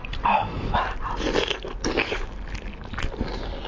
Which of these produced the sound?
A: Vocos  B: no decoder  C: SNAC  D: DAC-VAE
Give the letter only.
B